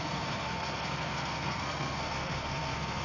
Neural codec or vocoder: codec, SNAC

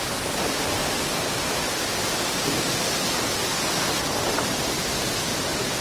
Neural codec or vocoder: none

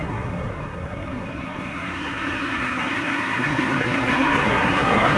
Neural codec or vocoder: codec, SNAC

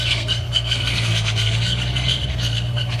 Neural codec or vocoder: codec, SNAC